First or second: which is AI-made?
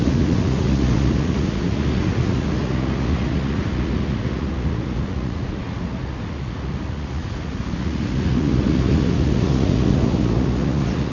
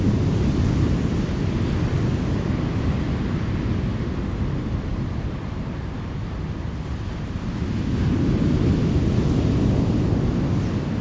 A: first